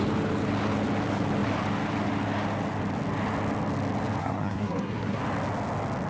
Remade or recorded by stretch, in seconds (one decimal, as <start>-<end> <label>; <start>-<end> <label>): 0.0-4.2 recorded; 4.2-5.2 remade; 5.2-6.1 recorded